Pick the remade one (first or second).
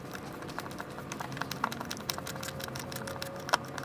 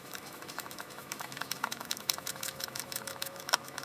second